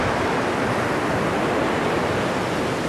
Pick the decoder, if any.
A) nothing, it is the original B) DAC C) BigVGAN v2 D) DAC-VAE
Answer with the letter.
A